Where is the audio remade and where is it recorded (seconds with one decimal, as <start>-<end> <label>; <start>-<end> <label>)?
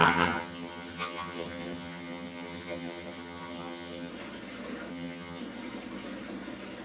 0.0-4.1 remade; 4.1-4.9 recorded; 4.9-5.4 remade; 5.4-6.8 recorded